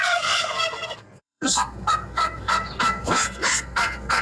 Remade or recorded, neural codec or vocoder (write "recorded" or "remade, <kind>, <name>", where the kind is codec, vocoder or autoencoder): remade, codec, SNAC